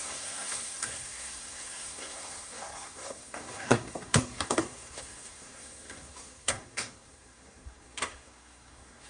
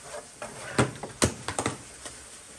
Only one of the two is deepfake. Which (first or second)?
first